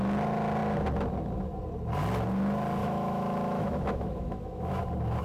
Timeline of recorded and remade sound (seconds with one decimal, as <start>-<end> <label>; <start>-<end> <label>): 0.0-2.8 recorded; 2.8-4.8 remade; 4.8-5.2 recorded